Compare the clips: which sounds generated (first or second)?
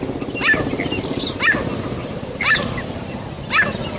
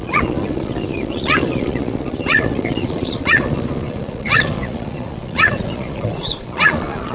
second